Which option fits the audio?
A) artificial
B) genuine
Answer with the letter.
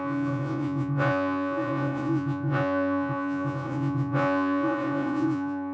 A